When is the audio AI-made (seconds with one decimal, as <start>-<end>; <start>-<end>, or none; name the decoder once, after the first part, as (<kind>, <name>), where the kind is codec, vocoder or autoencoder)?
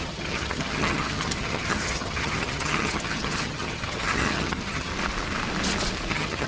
0.0-4.9 (vocoder, HiFi-GAN); 6.1-6.5